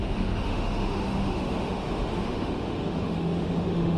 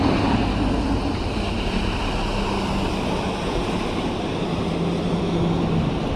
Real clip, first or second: second